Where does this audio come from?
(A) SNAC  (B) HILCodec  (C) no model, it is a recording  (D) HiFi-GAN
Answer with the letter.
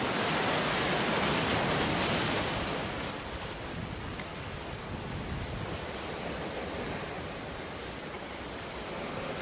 C